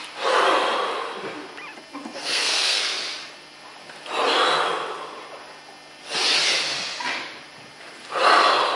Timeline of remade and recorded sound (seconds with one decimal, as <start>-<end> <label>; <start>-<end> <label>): 0.0-2.2 recorded; 2.2-2.9 remade; 2.9-8.8 recorded